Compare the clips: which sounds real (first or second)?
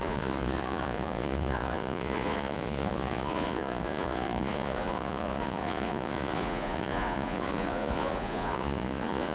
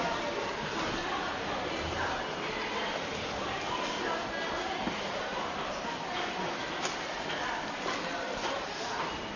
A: second